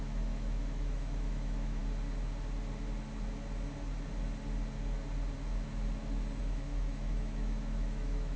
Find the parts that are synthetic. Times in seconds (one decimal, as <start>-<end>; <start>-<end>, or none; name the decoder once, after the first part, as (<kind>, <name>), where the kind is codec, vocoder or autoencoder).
0.0-1.8 (autoencoder, DAC-VAE); 6.4-8.4

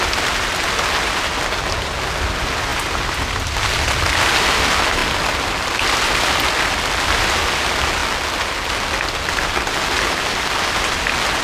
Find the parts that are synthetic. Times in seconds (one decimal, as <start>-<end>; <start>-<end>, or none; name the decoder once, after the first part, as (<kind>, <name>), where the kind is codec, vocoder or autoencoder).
none

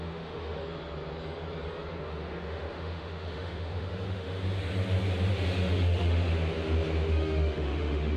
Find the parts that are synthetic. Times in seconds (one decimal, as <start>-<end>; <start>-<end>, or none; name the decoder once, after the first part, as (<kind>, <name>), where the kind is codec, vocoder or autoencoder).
0.0-0.6 (autoencoder, DAC-VAE); 2.0-4.4; 5.3-6.3; 7.1-8.2

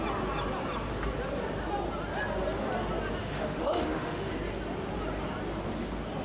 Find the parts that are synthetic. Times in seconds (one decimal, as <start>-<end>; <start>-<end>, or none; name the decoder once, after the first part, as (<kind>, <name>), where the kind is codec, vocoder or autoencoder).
3.2-4.3 (autoencoder, DAC-VAE)

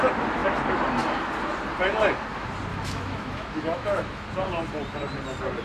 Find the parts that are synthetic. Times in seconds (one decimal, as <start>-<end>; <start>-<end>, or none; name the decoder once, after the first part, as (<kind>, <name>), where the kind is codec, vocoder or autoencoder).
2.7-4.3 (autoencoder, DAC-VAE)

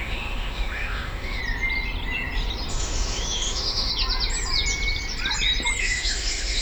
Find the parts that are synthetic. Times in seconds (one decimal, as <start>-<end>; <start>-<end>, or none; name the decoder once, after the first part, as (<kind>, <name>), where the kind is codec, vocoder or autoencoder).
0.0-1.4 (autoencoder, DAC-VAE); 2.7-3.9; 5.8-6.6

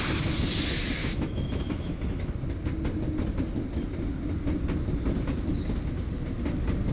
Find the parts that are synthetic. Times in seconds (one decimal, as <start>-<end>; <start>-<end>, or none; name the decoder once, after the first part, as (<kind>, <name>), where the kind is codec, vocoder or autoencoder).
1.0-2.3 (autoencoder, DAC-VAE)